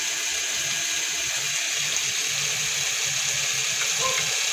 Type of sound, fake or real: real